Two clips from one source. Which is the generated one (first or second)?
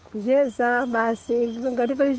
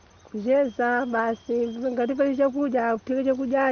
first